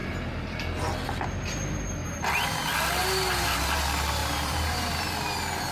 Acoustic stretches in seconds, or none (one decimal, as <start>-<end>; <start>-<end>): 0.7-2.0; 2.5-3.0; 3.8-4.2; 5.1-5.7